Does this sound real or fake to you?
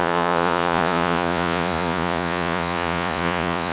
fake